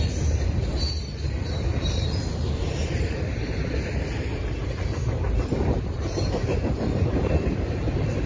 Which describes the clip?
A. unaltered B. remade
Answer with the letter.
B